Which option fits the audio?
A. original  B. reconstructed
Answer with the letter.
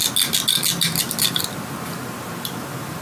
A